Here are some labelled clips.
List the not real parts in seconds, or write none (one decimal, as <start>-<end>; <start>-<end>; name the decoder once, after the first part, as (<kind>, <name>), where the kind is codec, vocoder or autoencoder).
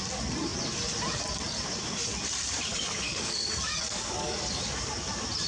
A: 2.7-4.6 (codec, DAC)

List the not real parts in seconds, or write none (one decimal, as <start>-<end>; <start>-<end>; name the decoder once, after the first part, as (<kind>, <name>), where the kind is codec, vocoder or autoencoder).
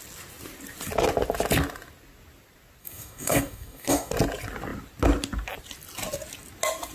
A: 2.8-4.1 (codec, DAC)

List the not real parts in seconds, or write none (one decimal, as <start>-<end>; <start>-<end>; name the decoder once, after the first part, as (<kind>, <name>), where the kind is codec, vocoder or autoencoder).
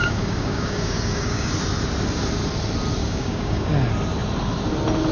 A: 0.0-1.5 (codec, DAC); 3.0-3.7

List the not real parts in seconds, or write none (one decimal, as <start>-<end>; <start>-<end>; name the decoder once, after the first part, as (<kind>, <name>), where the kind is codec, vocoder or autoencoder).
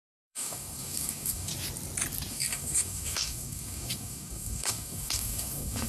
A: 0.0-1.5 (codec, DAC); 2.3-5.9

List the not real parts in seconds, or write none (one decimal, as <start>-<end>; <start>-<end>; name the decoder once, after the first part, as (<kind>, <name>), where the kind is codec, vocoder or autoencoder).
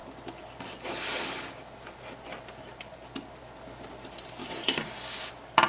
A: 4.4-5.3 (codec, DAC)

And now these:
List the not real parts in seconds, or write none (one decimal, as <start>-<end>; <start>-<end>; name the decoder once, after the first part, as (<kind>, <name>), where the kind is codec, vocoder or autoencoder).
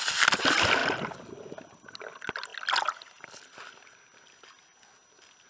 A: none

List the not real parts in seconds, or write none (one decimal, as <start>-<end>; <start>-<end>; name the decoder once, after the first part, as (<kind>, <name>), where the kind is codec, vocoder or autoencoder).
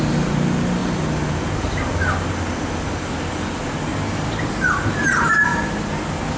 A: none